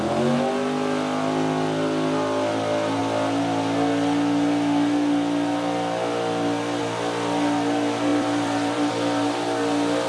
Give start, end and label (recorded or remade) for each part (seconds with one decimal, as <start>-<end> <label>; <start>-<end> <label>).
0.0-8.1 recorded; 8.1-8.9 remade; 8.9-10.1 recorded